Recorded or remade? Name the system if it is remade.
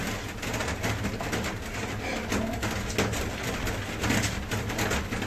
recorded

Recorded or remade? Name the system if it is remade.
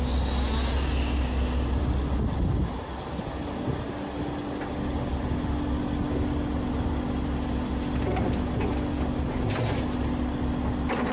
recorded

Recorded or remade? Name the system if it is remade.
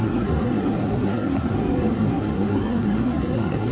remade, codec, SNAC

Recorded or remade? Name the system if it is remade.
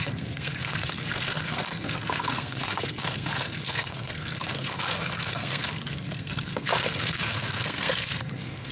remade, codec, SNAC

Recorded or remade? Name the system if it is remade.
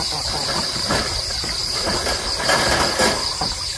recorded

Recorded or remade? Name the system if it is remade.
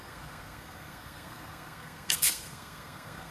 remade, codec, SNAC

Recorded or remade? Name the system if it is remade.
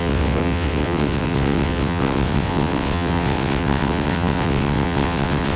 remade, vocoder, WaveNeXt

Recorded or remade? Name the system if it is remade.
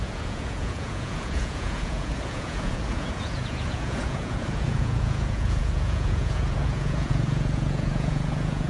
remade, vocoder, Vocos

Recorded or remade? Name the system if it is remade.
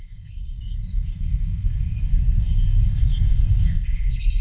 remade, codec, SNAC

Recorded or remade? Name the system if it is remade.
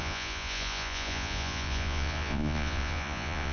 remade, vocoder, Vocos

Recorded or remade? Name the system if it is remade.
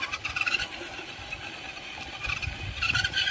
recorded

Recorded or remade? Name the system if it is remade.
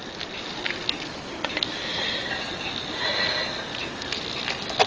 recorded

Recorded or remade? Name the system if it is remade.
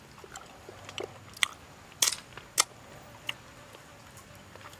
recorded